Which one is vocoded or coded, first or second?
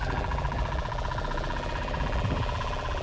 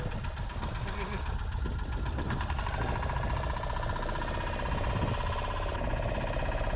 first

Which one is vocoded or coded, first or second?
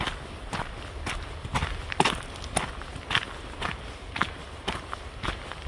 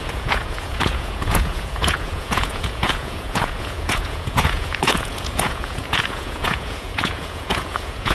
second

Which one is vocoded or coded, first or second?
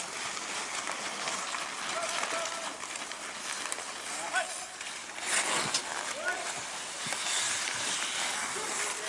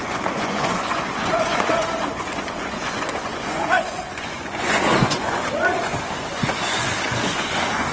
second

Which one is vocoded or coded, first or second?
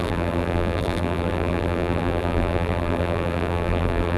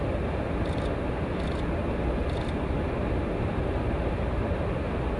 first